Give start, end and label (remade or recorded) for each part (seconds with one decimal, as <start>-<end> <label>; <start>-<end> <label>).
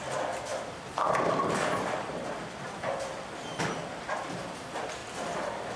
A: 0.0-0.5 recorded; 0.5-4.0 remade; 4.0-5.0 recorded; 5.0-5.8 remade